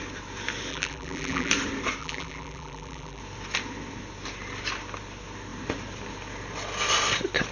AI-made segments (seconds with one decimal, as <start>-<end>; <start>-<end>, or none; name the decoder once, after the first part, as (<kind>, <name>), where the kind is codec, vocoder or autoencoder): 0.7-1.5 (vocoder, BigVGAN v2); 2.0-3.2